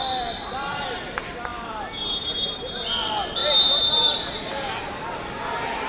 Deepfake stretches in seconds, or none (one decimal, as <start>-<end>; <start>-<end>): none